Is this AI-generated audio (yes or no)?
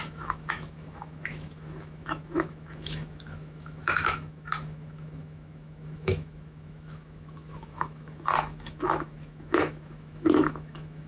yes